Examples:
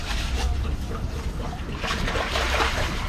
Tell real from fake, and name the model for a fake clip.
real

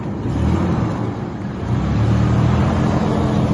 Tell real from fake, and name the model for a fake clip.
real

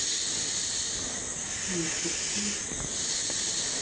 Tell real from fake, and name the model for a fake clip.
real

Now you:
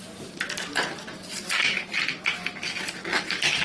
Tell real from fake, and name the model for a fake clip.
real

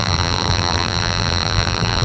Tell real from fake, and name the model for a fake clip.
fake, vocoder, BigVGAN v2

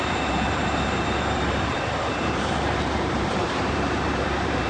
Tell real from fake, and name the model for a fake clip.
fake, vocoder, BigVGAN v2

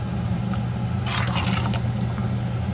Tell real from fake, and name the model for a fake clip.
real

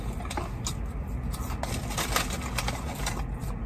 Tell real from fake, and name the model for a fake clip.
real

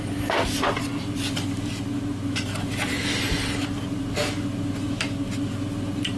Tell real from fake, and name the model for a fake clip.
real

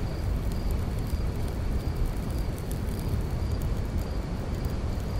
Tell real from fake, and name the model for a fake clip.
fake, vocoder, BigVGAN v2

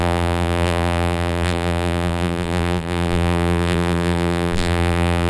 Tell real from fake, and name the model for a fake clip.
fake, vocoder, BigVGAN v2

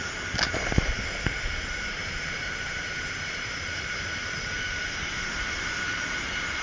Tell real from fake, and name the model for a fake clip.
fake, vocoder, BigVGAN v2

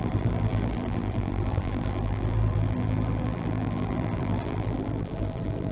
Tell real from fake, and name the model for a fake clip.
fake, vocoder, BigVGAN v2